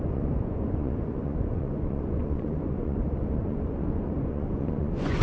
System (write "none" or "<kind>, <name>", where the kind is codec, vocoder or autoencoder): vocoder, Vocos